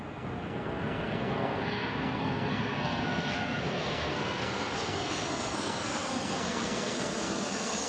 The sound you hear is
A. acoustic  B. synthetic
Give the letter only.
B